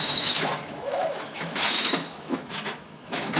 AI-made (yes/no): yes